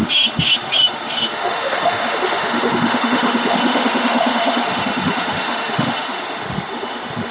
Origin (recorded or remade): remade